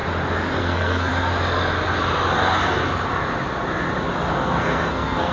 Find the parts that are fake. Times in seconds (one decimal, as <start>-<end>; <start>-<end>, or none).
0.6-1.1; 4.3-5.3